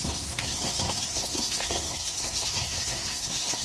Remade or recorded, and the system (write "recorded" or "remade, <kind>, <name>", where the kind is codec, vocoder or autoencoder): remade, codec, SNAC